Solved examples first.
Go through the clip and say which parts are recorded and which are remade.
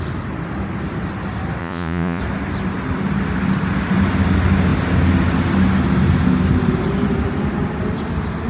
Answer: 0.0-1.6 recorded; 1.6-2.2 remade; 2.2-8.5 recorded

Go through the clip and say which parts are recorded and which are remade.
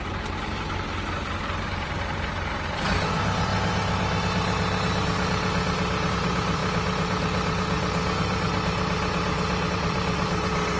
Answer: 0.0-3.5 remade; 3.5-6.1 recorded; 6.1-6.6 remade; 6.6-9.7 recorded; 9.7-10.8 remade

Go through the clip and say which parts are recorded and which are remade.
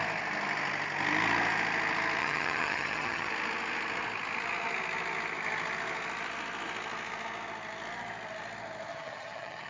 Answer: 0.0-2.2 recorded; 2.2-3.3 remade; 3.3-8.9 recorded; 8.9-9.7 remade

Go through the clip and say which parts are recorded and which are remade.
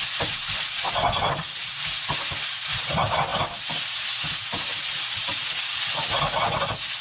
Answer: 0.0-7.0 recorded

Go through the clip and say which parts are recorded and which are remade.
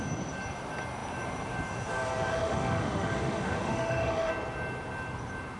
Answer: 0.0-2.3 recorded; 2.3-4.3 remade; 4.3-5.6 recorded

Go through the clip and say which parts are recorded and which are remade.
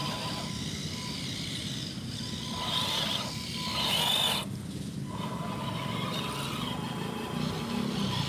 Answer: 0.0-8.3 recorded